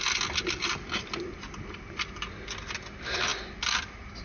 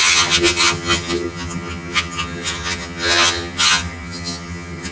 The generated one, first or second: second